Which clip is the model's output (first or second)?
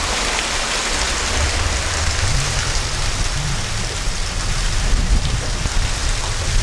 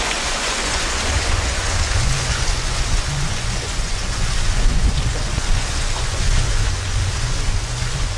second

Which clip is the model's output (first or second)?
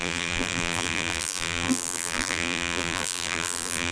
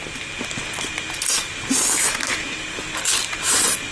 first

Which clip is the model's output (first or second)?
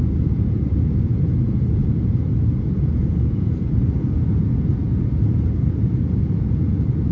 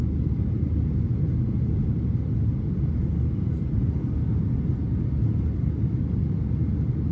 first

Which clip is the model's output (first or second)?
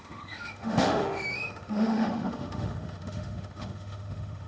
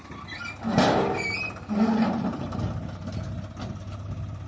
first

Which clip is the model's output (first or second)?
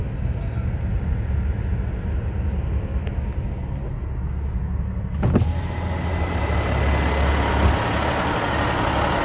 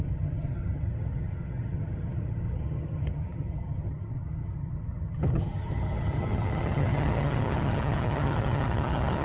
second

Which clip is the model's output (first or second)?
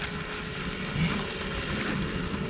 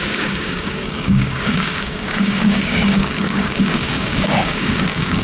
second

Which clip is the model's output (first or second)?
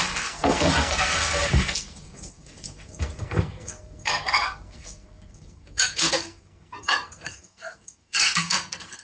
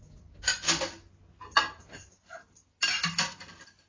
first